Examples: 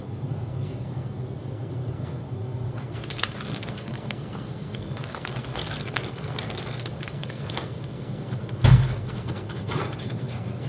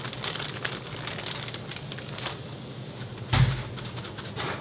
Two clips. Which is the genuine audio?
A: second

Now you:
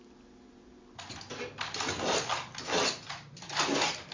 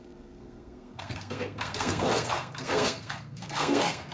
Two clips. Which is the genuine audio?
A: first